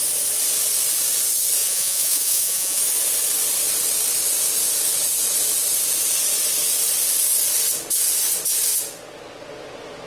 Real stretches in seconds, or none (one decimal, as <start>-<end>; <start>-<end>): 0.0-1.6; 2.8-10.1

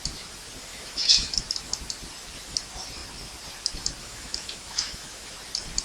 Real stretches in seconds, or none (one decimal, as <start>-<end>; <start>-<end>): 0.0-0.7; 1.4-4.0; 5.3-5.8

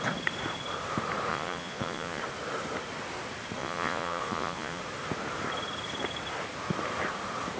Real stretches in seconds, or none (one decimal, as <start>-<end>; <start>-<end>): 0.0-1.3; 2.2-3.6; 4.8-7.6

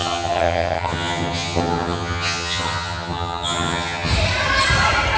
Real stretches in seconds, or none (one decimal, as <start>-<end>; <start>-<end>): 4.1-5.2

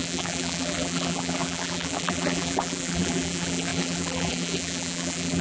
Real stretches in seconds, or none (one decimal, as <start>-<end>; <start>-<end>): none

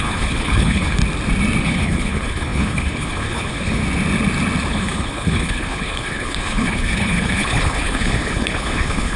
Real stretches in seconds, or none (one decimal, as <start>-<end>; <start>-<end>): 1.0-1.6; 3.8-4.7